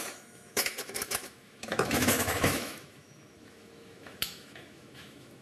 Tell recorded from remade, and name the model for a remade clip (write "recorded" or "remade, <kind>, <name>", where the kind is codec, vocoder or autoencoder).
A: remade, autoencoder, DAC-VAE